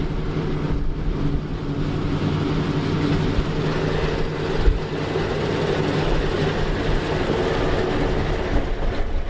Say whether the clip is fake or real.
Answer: real